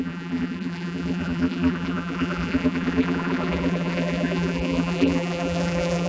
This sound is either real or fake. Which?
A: fake